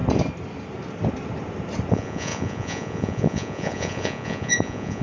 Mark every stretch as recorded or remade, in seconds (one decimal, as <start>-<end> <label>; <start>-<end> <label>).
0.0-1.9 recorded; 1.9-5.0 remade